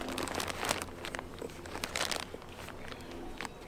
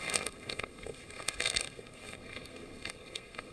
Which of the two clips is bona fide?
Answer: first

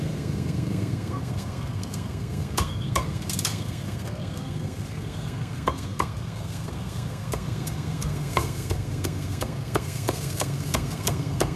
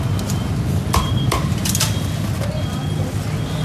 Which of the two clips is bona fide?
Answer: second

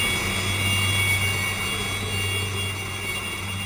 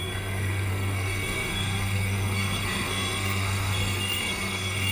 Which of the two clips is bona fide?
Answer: first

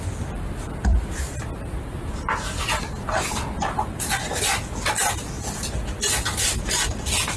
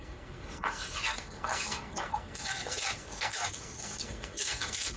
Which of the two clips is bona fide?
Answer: first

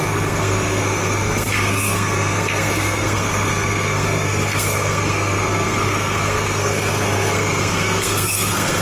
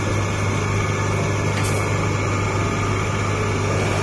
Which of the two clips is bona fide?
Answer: second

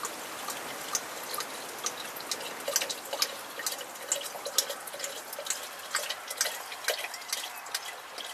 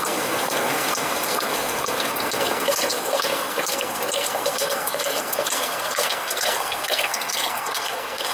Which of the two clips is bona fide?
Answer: first